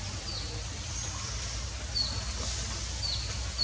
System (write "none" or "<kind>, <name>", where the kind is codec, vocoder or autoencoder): none